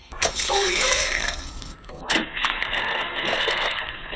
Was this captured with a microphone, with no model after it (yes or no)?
no